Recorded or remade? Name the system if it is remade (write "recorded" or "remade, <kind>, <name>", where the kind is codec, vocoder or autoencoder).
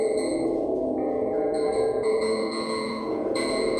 remade, vocoder, Vocos